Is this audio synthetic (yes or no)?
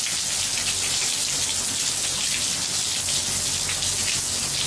no